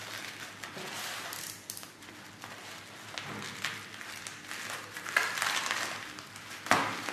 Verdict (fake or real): real